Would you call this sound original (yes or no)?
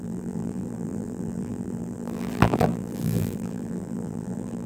no